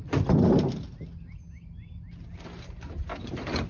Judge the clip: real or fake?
real